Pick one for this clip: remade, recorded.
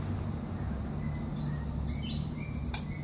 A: recorded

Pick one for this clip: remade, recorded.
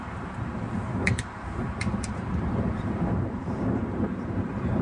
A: remade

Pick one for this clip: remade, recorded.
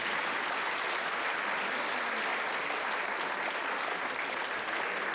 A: recorded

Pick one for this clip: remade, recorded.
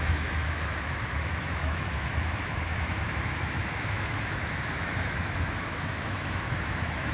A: remade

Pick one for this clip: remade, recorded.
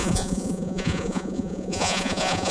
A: remade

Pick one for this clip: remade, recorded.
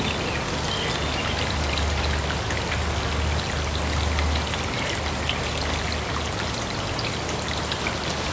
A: recorded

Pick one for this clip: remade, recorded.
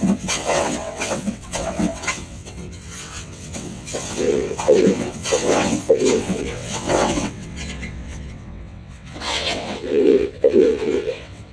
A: remade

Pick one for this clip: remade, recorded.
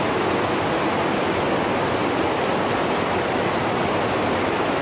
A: recorded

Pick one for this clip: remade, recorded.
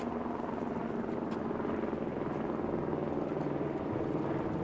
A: recorded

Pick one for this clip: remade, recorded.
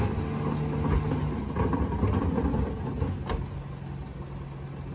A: recorded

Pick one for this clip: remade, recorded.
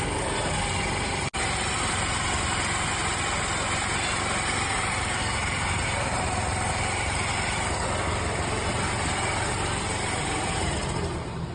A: recorded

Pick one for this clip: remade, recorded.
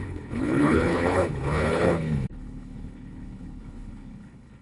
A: remade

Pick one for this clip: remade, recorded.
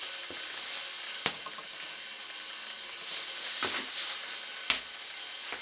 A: recorded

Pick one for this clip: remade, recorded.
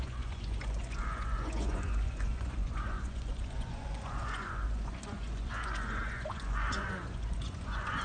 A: remade